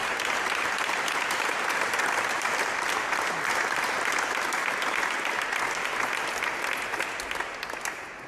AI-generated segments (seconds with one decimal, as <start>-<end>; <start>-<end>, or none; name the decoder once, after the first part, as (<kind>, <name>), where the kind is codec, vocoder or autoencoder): 0.0-2.9 (vocoder, BigVGAN v2)